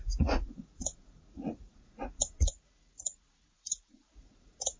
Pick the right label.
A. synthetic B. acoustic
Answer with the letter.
A